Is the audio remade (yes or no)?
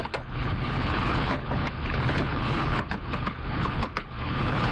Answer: yes